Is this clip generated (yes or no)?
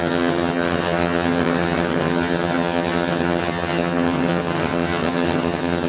yes